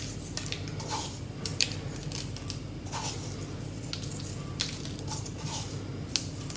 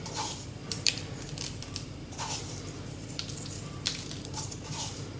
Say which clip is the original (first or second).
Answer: first